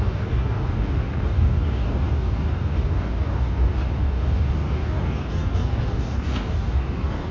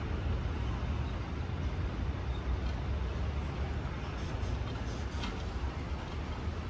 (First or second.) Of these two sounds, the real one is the second